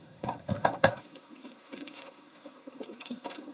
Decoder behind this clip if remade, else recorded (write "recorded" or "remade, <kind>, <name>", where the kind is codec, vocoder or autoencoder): remade, codec, SNAC